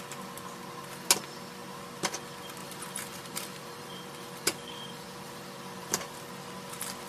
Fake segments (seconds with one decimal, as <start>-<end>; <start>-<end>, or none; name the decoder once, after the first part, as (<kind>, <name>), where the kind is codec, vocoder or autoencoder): 2.6-6.0 (vocoder, BigVGAN v2)